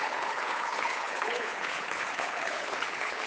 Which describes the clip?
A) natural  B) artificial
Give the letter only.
B